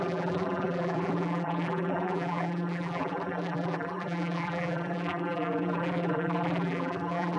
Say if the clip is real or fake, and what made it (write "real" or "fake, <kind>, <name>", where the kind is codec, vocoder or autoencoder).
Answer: fake, vocoder, BigVGAN v2